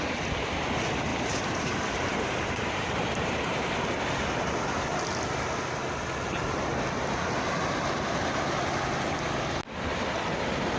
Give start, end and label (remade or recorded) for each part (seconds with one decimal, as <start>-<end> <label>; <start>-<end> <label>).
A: 0.0-1.1 recorded; 1.1-3.7 remade; 3.7-10.8 recorded